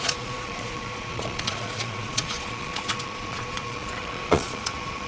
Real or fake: fake